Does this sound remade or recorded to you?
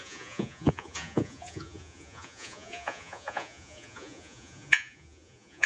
remade